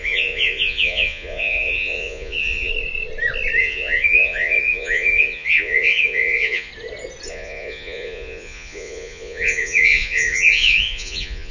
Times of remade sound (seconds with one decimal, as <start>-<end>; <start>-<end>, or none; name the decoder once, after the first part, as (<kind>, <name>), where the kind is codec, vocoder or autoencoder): 0.0-2.7 (vocoder, Vocos); 3.6-6.7; 7.3-11.5